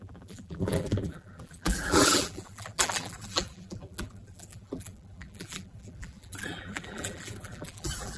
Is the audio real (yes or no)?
no